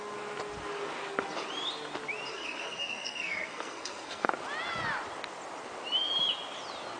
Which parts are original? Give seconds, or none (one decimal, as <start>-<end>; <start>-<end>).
0.0-2.3; 4.3-7.0